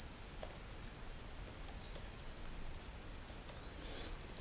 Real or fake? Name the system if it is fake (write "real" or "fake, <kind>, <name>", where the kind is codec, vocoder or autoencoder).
real